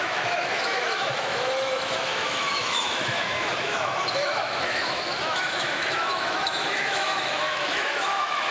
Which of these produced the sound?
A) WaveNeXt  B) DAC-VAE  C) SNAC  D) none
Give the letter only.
B